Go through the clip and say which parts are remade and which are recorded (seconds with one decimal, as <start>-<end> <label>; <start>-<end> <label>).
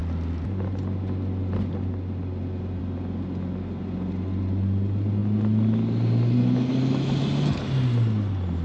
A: 0.0-8.6 recorded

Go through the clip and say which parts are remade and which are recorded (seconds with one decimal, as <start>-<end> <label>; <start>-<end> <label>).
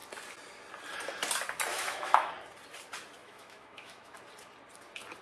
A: 0.0-1.7 recorded; 1.7-2.3 remade; 2.3-3.2 recorded; 3.2-4.2 remade; 4.2-5.2 recorded